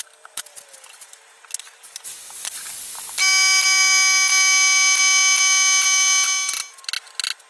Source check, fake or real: real